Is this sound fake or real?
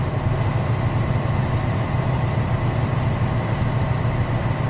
fake